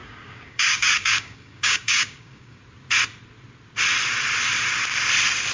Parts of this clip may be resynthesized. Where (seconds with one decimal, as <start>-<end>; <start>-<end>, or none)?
0.0-2.6